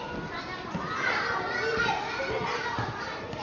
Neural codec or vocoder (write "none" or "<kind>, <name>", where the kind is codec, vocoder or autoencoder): none